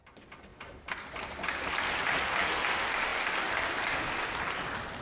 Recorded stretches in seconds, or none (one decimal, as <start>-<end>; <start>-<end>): 0.0-5.0